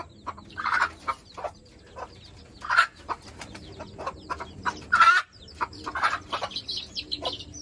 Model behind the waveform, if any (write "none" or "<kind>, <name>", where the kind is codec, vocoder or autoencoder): vocoder, BigVGAN v2